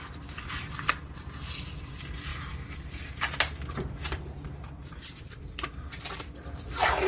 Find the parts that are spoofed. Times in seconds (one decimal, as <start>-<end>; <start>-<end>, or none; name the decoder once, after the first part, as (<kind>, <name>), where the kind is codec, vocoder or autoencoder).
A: 2.3-6.0 (vocoder, BigVGAN v2)